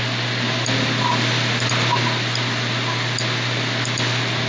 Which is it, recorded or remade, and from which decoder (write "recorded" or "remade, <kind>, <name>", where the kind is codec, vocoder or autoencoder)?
recorded